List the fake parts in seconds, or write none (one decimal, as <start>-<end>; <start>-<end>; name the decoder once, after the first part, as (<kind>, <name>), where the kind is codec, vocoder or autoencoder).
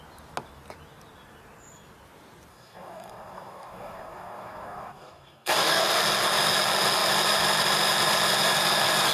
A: 2.5-6.0 (codec, DAC)